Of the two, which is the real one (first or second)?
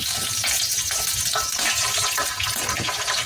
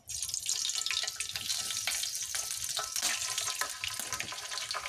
second